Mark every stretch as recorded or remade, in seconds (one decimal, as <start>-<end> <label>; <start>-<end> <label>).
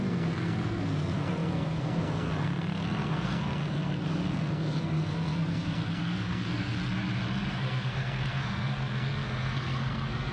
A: 0.0-6.8 remade; 6.8-7.5 recorded; 7.5-10.3 remade